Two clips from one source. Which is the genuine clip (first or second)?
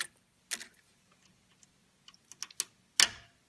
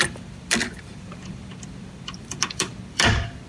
first